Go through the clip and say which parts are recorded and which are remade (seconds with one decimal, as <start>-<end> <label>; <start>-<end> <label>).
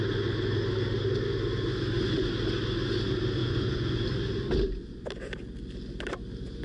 0.0-3.4 recorded; 3.4-4.0 remade; 4.0-6.6 recorded